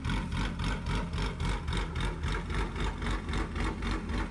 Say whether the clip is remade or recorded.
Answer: recorded